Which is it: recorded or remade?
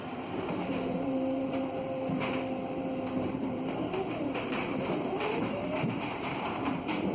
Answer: remade